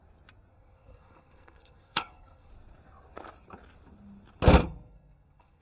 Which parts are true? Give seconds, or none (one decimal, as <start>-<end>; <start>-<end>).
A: 0.0-0.5; 2.5-4.6